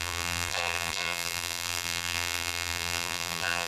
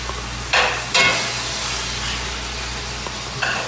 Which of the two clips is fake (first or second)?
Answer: first